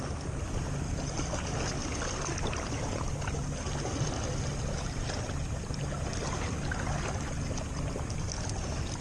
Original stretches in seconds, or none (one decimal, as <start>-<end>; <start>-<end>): 0.0-9.0